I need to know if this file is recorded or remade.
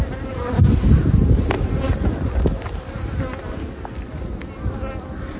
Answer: recorded